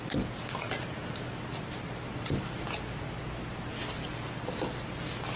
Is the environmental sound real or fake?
real